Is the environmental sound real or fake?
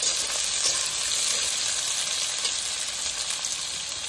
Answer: real